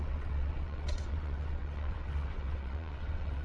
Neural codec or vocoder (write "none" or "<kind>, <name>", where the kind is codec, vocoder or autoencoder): vocoder, WaveNeXt